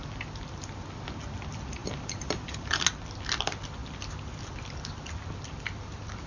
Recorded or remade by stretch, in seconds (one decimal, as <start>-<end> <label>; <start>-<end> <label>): 0.0-1.8 recorded; 1.8-2.8 remade; 2.8-6.3 recorded